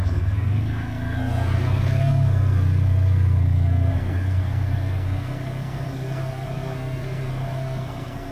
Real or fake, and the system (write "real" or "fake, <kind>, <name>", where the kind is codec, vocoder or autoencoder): fake, codec, SNAC